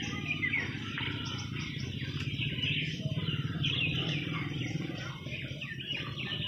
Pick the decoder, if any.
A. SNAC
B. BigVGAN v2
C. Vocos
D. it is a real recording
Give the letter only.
B